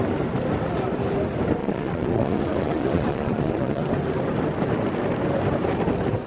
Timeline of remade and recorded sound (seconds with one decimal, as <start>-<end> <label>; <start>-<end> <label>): 0.0-1.6 recorded; 1.6-3.9 remade; 3.9-6.3 recorded